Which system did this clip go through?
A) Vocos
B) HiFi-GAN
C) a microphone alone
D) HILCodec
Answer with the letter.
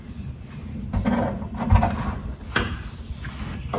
C